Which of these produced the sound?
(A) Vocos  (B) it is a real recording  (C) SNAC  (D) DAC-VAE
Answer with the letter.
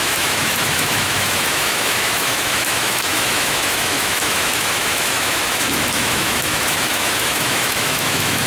D